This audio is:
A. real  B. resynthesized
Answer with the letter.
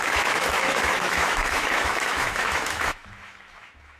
B